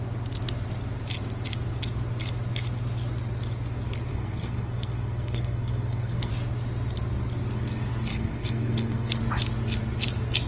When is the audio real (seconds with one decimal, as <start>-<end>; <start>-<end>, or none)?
0.0-4.1; 6.3-8.1; 9.2-10.5